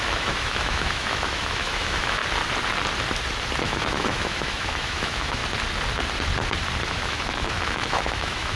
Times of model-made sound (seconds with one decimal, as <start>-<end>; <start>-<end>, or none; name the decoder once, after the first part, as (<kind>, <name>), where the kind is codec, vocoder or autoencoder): 0.0-2.2 (autoencoder, DAC-VAE); 3.6-5.4; 6.9-8.6